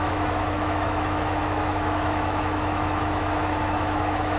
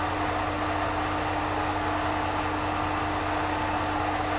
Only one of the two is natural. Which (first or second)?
second